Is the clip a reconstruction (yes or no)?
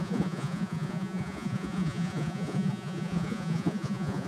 yes